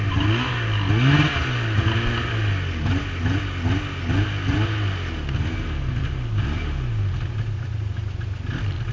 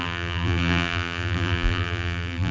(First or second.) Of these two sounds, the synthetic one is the second